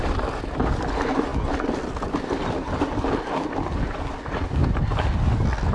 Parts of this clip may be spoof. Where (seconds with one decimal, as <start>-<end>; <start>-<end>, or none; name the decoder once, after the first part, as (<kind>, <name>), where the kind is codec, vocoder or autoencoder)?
none